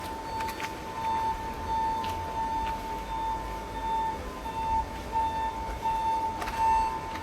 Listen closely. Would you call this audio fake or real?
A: real